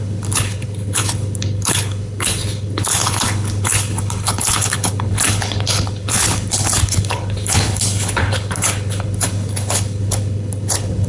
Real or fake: fake